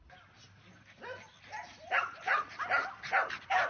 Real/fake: real